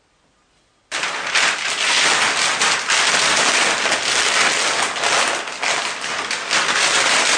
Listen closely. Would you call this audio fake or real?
real